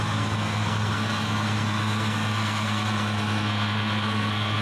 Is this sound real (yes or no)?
no